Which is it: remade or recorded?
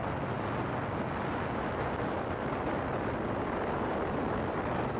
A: recorded